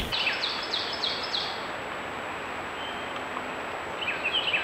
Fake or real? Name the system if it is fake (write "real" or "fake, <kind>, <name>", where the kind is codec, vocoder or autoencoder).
real